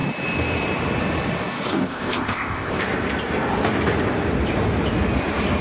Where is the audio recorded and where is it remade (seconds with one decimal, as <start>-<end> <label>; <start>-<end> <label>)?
0.0-1.7 recorded; 1.7-2.8 remade; 2.8-5.6 recorded